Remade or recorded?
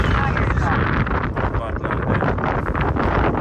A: recorded